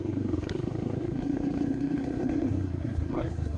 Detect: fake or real fake